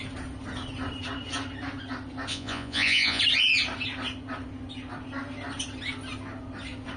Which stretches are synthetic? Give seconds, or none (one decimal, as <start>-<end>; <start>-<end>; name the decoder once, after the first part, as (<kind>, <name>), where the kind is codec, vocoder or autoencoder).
2.3-3.2 (vocoder, Vocos)